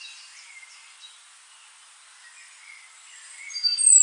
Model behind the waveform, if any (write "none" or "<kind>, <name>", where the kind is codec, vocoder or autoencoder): none